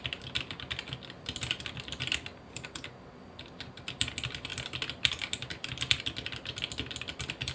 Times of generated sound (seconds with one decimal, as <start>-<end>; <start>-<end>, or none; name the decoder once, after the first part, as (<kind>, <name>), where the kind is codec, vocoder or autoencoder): none